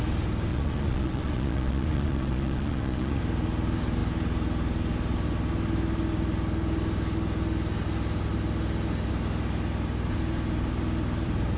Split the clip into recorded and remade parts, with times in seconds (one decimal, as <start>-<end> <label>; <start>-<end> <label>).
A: 0.0-0.5 recorded; 0.5-3.2 remade; 3.2-11.6 recorded